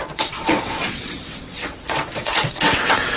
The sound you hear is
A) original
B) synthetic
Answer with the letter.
B